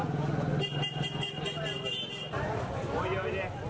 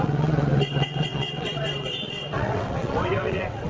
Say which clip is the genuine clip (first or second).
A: first